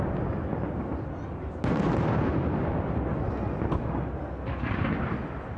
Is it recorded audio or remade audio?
recorded